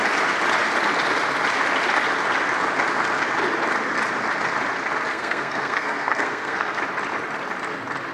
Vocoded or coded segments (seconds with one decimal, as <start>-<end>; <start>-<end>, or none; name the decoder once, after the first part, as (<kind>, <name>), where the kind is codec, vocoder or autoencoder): 5.1-6.8 (codec, SNAC)